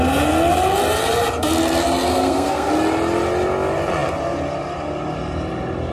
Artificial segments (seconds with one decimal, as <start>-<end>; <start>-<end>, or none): 2.1-2.7